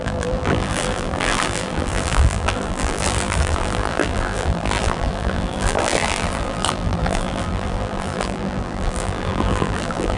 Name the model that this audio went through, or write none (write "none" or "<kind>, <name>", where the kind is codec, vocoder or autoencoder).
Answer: vocoder, BigVGAN v2